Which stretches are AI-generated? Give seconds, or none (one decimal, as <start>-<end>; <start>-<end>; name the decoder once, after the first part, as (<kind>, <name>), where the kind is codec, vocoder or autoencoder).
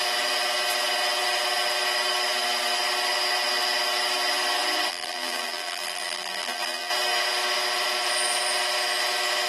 4.9-6.9 (vocoder, BigVGAN v2)